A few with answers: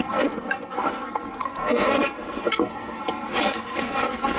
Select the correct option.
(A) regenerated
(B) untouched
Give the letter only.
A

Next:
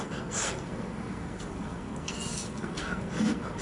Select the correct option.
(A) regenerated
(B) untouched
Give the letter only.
A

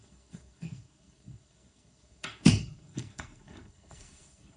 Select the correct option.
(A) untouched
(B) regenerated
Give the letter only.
B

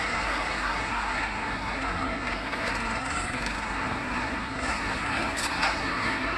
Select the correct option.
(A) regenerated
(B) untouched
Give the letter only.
A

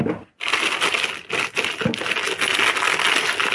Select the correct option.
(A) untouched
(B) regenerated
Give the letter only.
A